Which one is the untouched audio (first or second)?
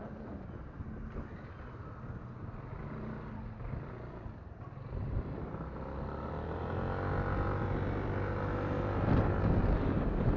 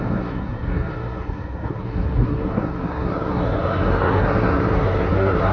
first